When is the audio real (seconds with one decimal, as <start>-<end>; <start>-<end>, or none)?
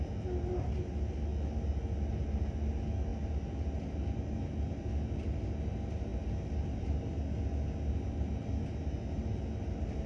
0.0-10.1